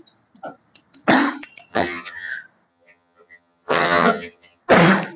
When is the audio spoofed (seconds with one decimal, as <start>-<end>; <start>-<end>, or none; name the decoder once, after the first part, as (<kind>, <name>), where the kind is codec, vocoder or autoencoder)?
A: 1.7-2.3 (vocoder, HiFi-GAN); 2.7-4.6